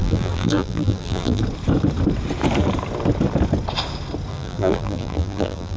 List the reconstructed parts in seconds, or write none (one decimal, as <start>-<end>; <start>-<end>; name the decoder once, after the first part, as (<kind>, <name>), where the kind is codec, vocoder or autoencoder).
0.0-1.4 (vocoder, BigVGAN v2); 4.3-5.8